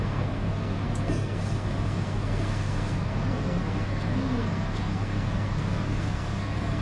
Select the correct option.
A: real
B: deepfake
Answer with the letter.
B